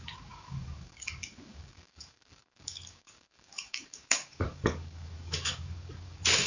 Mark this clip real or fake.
fake